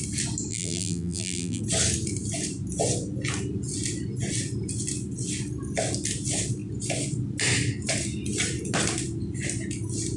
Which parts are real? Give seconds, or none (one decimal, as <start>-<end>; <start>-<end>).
0.0-0.5; 1.6-10.2